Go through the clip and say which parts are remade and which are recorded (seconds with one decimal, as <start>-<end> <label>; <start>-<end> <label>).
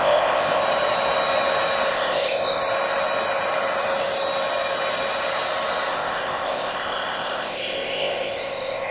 0.0-0.6 remade; 0.6-1.9 recorded; 1.9-2.6 remade; 2.6-5.9 recorded; 5.9-8.9 remade